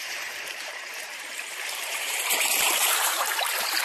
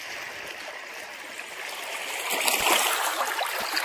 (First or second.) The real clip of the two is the second